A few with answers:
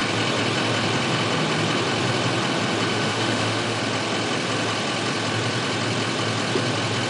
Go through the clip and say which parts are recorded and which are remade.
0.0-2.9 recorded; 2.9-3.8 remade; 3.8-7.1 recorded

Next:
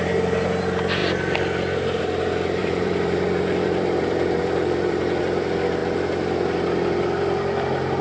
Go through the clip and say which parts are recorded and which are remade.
0.0-2.6 recorded; 2.6-5.2 remade; 5.2-8.0 recorded